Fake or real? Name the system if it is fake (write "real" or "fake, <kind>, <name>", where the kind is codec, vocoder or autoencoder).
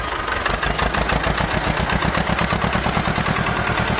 real